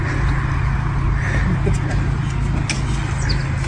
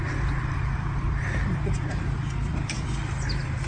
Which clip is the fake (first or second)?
second